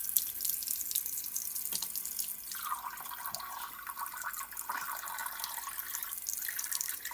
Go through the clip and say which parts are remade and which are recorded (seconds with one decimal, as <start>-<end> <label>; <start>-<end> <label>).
0.0-7.1 recorded